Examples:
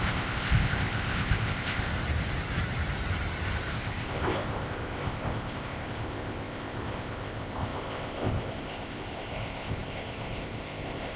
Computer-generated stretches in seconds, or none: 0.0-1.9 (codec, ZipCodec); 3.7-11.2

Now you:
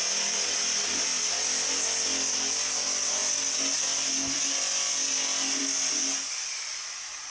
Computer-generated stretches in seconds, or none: none

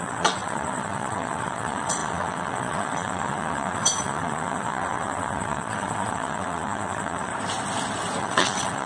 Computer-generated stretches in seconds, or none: 0.0-7.3 (vocoder, WaveNeXt); 8.2-8.9

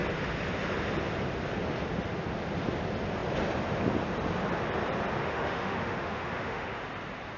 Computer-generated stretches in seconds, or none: 5.2-6.8 (autoencoder, DAC-VAE)

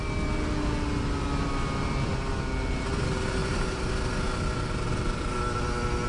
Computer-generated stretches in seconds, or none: 3.4-3.9 (vocoder, BigVGAN v2)

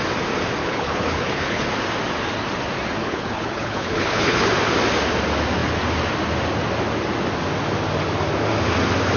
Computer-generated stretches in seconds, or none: 0.6-1.7 (codec, HILCodec); 3.0-4.5